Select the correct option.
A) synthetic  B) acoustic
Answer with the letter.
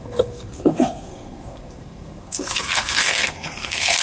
A